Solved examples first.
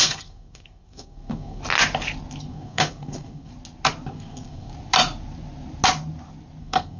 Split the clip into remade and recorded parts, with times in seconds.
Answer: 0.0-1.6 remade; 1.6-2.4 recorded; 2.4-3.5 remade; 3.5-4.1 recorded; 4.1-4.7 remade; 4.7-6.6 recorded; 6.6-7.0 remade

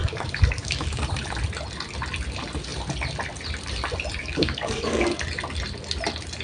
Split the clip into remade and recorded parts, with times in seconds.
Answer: 0.0-1.0 remade; 1.0-4.2 recorded; 4.2-5.0 remade; 5.0-6.4 recorded

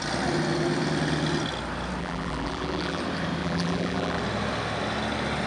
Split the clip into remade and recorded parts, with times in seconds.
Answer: 0.0-2.0 recorded; 2.0-3.0 remade; 3.0-3.4 recorded; 3.4-4.2 remade; 4.2-5.5 recorded

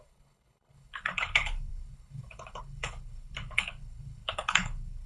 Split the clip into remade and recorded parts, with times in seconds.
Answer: 0.0-5.1 remade

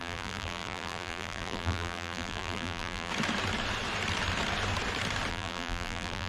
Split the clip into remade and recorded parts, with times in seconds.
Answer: 0.0-3.1 remade; 3.1-5.3 recorded; 5.3-6.3 remade

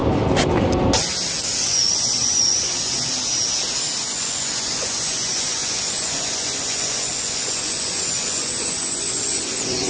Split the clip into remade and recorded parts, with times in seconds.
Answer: 0.0-1.6 recorded; 1.6-3.1 remade; 3.1-4.0 recorded; 4.0-9.9 remade

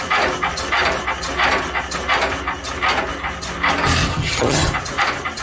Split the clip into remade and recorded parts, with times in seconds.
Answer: 0.0-4.1 recorded; 4.1-4.7 remade; 4.7-5.4 recorded

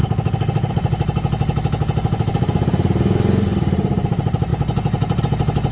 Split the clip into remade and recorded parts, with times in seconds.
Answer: 0.0-0.7 remade; 0.7-5.7 recorded